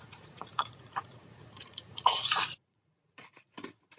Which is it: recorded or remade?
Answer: remade